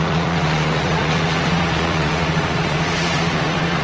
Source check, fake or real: fake